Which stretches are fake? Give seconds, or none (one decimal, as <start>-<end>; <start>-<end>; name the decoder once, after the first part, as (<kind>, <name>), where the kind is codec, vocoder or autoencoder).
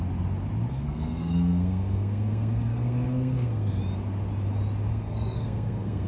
0.7-3.8 (codec, SNAC); 4.9-6.1